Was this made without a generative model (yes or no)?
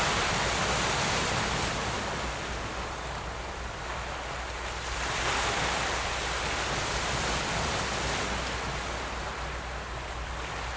yes